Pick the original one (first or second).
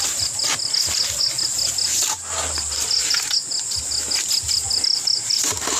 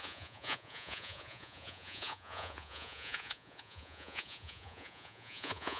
first